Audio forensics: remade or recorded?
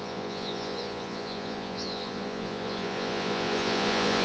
remade